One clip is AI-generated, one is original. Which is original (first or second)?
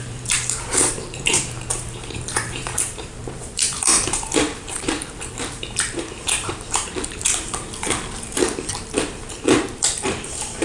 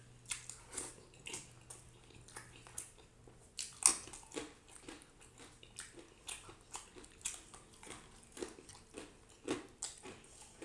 second